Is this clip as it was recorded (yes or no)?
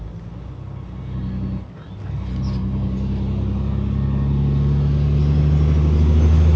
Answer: yes